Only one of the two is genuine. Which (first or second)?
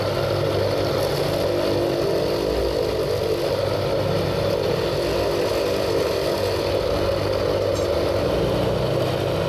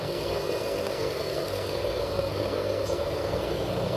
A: first